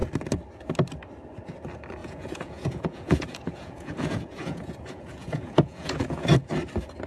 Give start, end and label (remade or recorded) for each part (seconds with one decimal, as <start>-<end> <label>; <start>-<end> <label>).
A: 0.0-2.0 recorded; 2.0-6.3 remade; 6.3-7.1 recorded